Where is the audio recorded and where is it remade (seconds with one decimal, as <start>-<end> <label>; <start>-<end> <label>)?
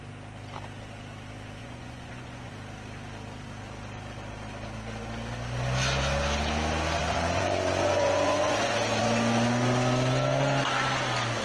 0.0-1.6 recorded; 1.6-2.5 remade; 2.5-7.0 recorded; 7.0-9.0 remade; 9.0-11.4 recorded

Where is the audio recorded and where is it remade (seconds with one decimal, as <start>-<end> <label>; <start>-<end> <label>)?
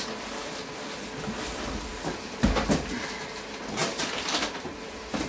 0.0-3.8 recorded; 3.8-5.3 remade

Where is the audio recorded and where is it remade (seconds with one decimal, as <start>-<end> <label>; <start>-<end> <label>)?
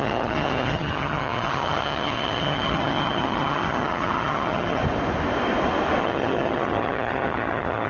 0.0-4.8 remade; 4.8-6.0 recorded; 6.0-7.9 remade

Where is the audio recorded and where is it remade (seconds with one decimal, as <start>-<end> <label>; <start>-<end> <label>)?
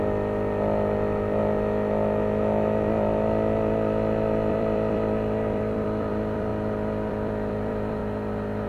0.0-1.4 remade; 1.4-4.5 recorded; 4.5-6.5 remade; 6.5-7.1 recorded; 7.1-8.0 remade; 8.0-8.7 recorded